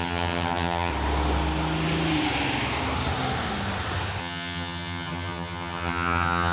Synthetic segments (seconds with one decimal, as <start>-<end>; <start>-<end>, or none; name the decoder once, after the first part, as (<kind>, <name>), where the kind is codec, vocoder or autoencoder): 0.0-0.9 (vocoder, HiFi-GAN); 4.2-6.5